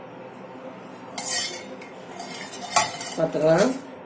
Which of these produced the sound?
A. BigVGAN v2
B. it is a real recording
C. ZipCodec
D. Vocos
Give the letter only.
B